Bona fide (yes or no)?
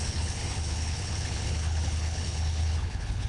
no